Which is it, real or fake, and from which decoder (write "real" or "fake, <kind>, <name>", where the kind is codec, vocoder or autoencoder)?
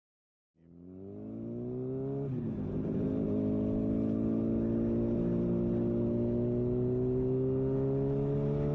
real